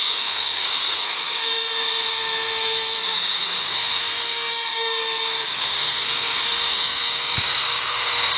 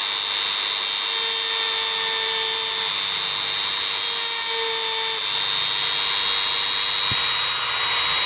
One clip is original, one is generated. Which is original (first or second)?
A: second